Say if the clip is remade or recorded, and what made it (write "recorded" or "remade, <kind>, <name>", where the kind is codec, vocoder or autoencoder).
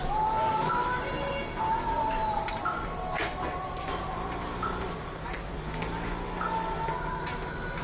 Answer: recorded